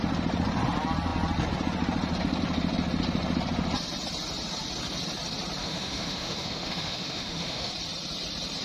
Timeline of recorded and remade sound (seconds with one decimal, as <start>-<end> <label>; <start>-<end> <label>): 0.0-5.6 recorded; 5.6-7.7 remade; 7.7-8.6 recorded